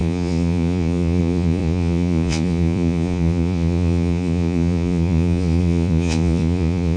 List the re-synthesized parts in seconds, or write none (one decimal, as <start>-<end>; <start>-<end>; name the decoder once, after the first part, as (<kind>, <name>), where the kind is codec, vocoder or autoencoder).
0.0-7.0 (vocoder, Vocos)